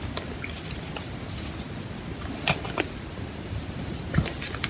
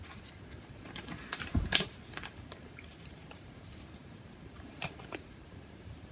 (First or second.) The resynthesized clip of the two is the second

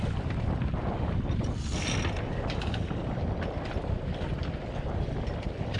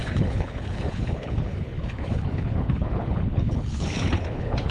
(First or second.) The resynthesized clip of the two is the second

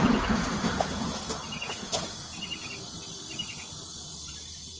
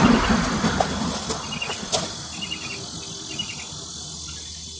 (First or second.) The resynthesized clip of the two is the first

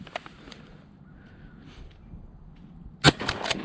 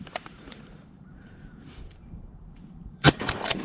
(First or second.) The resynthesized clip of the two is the second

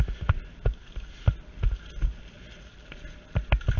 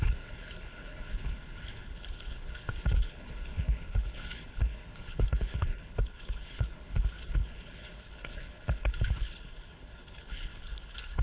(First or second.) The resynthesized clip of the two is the second